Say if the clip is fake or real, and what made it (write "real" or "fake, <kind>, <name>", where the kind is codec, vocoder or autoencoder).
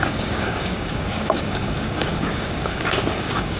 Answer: fake, codec, DAC